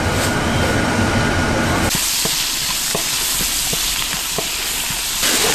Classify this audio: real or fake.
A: real